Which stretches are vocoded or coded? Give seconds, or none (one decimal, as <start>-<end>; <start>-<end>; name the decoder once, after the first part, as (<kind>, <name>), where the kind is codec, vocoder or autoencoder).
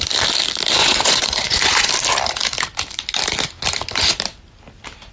0.8-1.9 (vocoder, Vocos)